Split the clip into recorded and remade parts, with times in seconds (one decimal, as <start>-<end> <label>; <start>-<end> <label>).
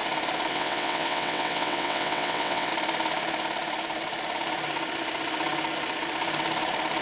0.0-0.5 recorded; 0.5-2.7 remade; 2.7-7.0 recorded